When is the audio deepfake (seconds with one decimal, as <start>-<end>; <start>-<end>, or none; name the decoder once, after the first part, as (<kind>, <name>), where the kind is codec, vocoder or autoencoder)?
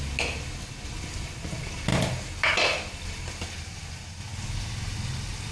none